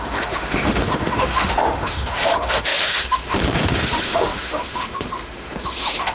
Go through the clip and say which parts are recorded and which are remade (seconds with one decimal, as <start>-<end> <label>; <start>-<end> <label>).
0.0-6.1 remade